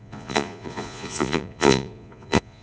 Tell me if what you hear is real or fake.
fake